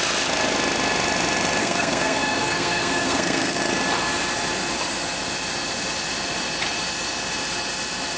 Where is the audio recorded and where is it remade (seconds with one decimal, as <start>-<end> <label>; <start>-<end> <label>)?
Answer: 0.0-1.6 recorded; 1.6-3.6 remade; 3.6-8.2 recorded